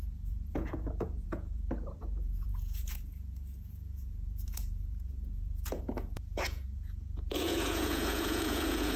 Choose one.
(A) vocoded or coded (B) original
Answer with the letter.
A